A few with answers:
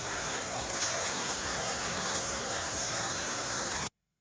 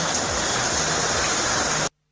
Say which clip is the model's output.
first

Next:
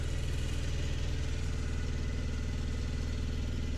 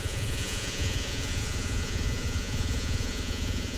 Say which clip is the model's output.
second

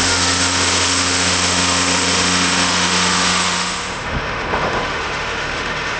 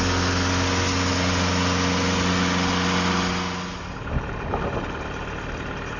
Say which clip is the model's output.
first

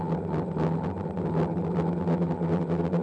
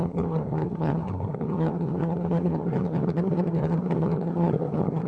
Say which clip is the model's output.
second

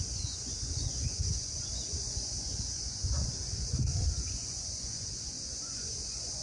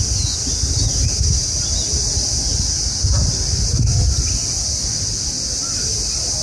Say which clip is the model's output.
first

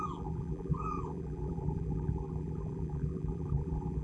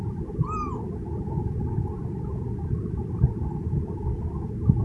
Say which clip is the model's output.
first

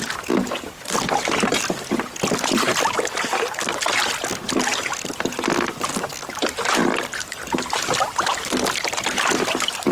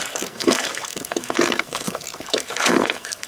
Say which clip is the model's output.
second